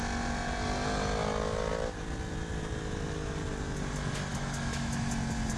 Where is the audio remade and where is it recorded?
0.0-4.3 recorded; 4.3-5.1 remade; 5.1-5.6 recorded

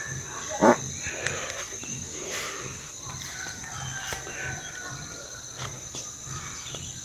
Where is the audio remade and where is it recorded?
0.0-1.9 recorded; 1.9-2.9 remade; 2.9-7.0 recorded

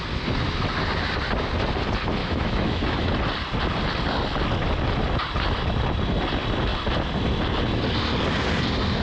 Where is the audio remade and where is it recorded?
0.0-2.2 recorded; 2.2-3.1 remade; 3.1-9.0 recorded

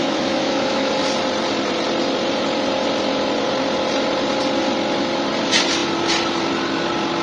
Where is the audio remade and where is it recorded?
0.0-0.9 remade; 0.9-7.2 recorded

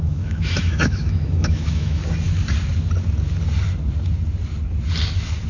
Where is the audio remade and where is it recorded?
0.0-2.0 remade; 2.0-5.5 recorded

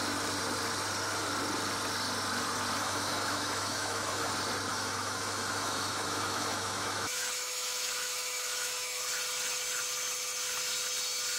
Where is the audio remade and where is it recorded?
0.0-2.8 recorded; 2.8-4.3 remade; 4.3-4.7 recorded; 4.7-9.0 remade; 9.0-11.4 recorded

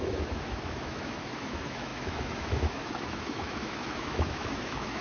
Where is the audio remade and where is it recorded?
0.0-5.0 remade